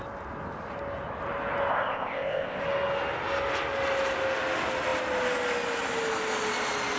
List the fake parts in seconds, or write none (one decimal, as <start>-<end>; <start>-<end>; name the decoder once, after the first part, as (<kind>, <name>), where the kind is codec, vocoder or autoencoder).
1.7-2.6 (codec, ZipCodec)